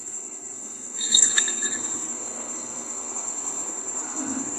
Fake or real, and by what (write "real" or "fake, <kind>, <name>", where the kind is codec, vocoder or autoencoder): fake, codec, SNAC